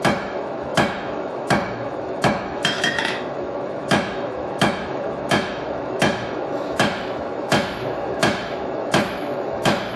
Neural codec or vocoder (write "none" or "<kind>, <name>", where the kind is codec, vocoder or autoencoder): autoencoder, DAC-VAE